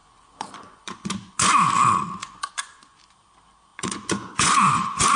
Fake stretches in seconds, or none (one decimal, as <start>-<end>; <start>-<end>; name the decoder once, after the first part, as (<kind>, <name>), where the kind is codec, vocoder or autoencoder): 0.0-1.5 (vocoder, Vocos); 2.2-3.0; 3.7-5.2